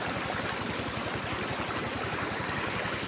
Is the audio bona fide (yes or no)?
yes